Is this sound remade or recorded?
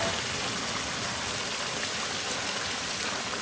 recorded